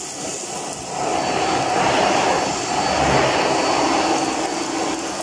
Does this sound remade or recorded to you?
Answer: recorded